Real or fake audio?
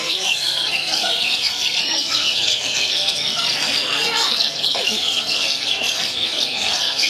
fake